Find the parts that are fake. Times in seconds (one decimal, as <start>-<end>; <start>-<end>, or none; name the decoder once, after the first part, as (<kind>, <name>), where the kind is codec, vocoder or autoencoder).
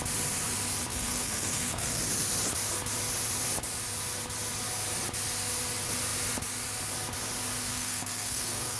0.9-2.0 (codec, SNAC); 7.7-8.8